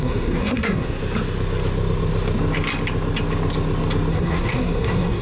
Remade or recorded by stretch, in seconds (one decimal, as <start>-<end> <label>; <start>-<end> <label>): 0.0-1.0 remade; 1.0-4.1 recorded; 4.1-5.2 remade